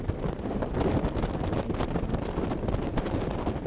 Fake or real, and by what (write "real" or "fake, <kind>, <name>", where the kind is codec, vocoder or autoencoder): real